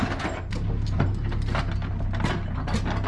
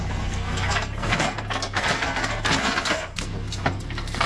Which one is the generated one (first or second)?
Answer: second